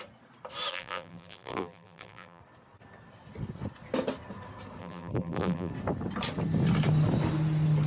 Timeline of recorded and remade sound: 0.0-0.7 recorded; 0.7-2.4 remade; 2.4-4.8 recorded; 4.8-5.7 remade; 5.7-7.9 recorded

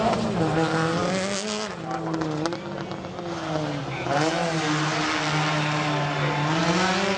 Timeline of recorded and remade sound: 0.0-7.2 recorded

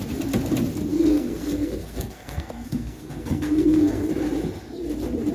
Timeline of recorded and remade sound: 0.0-0.9 recorded; 0.9-4.1 remade; 4.1-5.3 recorded

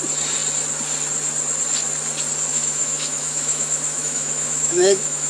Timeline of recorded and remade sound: 0.0-2.5 recorded; 2.5-5.3 remade